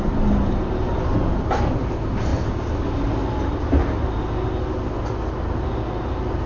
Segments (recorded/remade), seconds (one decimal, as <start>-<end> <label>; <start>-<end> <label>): 0.0-6.5 recorded